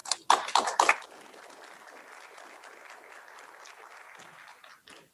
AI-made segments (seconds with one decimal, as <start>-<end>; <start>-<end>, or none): none